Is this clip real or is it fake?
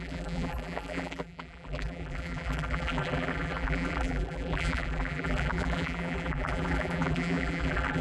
fake